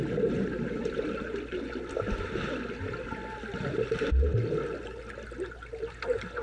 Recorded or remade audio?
recorded